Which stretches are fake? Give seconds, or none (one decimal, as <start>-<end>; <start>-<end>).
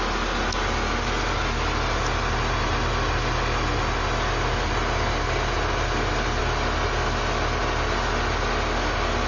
none